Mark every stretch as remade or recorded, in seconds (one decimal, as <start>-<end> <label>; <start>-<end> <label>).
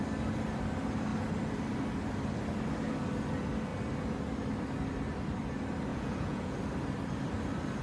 0.0-5.9 recorded; 5.9-6.6 remade; 6.6-7.8 recorded